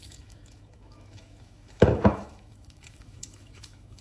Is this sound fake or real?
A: fake